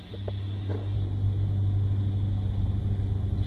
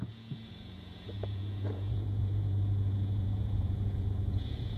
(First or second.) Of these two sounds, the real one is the first